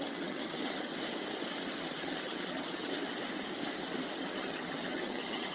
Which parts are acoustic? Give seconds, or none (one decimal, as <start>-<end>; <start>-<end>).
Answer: 0.9-1.8; 3.1-4.2